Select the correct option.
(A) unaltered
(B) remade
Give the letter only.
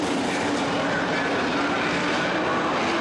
B